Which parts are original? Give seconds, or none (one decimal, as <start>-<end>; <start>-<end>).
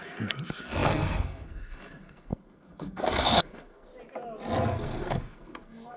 3.9-4.7